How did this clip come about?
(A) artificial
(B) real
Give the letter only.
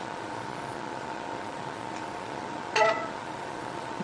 A